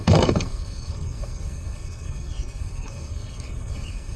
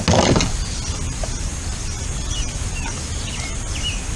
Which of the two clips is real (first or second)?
second